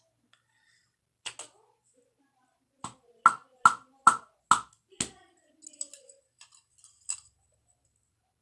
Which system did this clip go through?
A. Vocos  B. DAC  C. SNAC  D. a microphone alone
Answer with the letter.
D